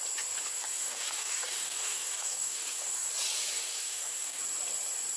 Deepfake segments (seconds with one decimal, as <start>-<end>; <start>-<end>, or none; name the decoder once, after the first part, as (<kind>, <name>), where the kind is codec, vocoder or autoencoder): 0.7-3.1 (codec, DAC); 3.5-4.4